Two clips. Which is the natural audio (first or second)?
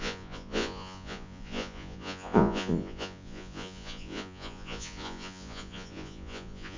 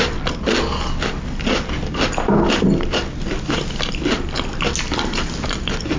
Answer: second